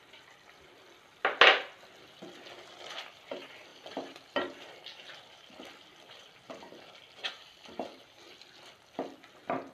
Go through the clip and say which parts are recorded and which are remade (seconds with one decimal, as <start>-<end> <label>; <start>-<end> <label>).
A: 0.0-3.7 recorded; 3.7-8.2 remade; 8.2-9.7 recorded